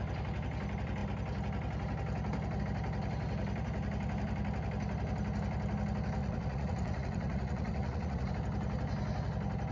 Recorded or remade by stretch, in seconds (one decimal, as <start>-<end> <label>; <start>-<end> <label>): 0.0-6.2 recorded; 6.2-8.3 remade; 8.3-9.7 recorded